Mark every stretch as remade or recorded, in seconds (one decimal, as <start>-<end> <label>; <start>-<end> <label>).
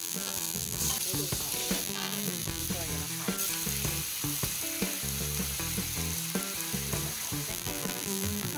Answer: 0.0-0.8 remade; 0.8-1.8 recorded; 1.8-2.6 remade; 2.6-7.5 recorded; 7.5-8.6 remade